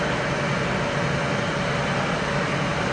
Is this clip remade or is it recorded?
recorded